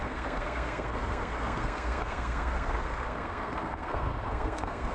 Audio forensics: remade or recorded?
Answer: remade